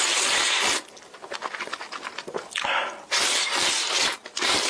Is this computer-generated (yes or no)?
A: no